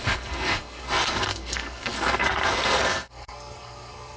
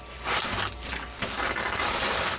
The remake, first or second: first